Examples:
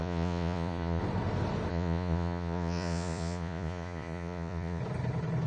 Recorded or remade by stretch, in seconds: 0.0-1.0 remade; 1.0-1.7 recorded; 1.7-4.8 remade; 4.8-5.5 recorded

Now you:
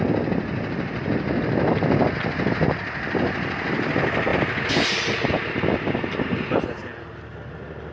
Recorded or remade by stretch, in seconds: 0.0-7.9 recorded

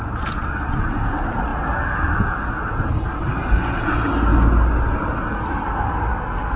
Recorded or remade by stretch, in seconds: 0.0-6.6 recorded

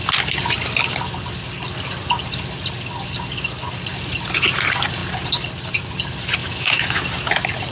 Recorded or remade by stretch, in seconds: 0.0-6.4 recorded; 6.4-7.0 remade; 7.0-7.7 recorded